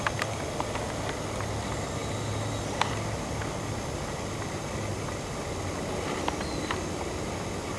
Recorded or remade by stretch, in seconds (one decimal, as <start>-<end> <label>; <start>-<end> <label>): 0.0-7.8 recorded